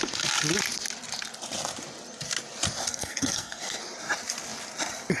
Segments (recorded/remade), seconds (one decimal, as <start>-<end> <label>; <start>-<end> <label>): 0.0-2.9 recorded; 2.9-3.8 remade; 3.8-5.2 recorded